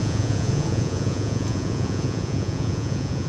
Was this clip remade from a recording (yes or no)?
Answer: yes